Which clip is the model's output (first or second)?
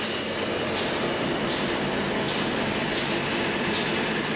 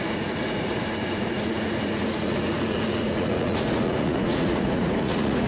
second